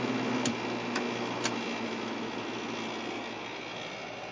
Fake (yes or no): no